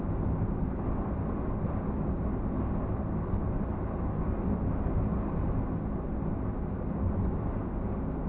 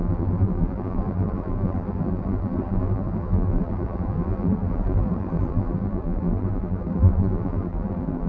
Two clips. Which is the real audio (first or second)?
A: first